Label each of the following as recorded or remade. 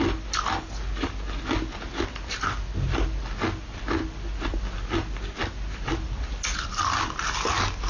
recorded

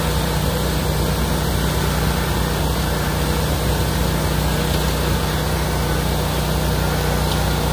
recorded